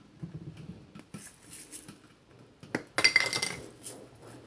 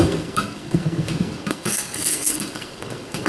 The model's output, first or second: second